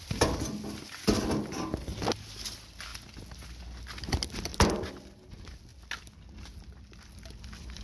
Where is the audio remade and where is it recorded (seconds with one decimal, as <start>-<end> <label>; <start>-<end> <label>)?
0.0-4.5 recorded; 4.5-5.0 remade; 5.0-7.8 recorded